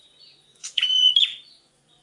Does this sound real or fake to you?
fake